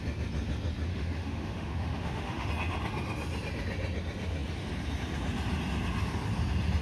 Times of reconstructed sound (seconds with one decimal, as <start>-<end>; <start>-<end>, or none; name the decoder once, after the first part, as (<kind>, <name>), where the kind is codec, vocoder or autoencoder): 0.9-2.5 (autoencoder, DAC-VAE)